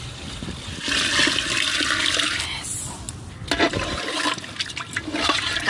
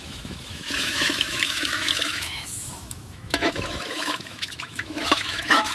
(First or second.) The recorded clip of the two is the first